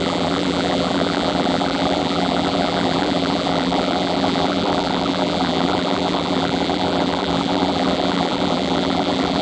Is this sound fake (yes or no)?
yes